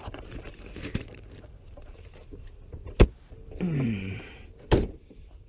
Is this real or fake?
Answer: fake